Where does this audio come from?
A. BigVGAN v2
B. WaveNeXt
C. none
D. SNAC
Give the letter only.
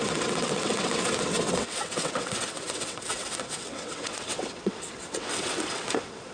B